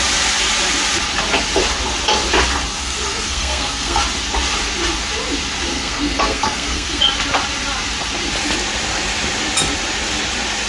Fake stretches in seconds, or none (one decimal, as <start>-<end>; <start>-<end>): 2.8-4.0; 5.7-7.0